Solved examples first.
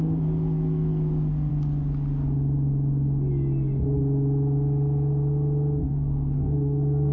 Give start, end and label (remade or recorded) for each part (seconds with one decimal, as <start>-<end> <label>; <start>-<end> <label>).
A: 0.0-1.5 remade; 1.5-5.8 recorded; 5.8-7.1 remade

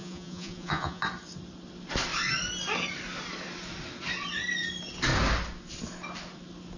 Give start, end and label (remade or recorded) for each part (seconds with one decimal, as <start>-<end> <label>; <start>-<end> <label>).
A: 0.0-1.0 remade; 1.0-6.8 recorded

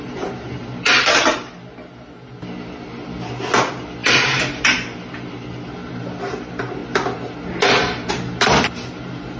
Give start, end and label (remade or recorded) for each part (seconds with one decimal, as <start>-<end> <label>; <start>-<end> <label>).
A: 0.0-9.4 recorded

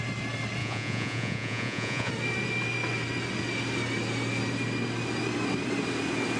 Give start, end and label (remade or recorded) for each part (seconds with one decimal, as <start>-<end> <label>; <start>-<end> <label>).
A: 0.0-0.6 recorded; 0.6-2.1 remade; 2.1-6.4 recorded